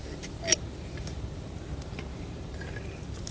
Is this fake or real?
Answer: real